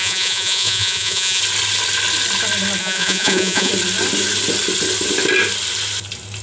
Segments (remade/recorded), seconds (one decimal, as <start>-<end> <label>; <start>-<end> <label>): 0.0-1.4 remade; 1.4-2.8 recorded; 2.8-3.7 remade; 3.7-6.4 recorded

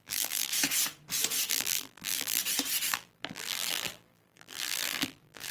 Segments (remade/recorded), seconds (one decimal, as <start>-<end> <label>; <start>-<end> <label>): 0.0-0.5 remade; 0.5-1.5 recorded; 1.5-2.4 remade; 2.4-2.9 recorded; 2.9-5.5 remade